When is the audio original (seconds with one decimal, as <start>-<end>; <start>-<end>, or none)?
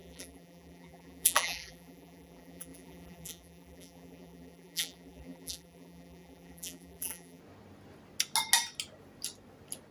7.4-9.9